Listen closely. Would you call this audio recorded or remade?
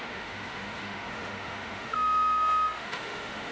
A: remade